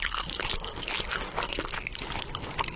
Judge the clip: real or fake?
real